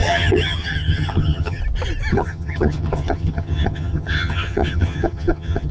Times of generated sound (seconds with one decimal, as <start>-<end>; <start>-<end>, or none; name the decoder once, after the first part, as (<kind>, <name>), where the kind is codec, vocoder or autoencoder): 0.0-1.6 (vocoder, HiFi-GAN); 2.1-5.7